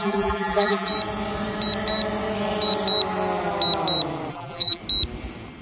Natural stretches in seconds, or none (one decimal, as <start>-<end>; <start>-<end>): 0.9-4.3; 4.8-5.6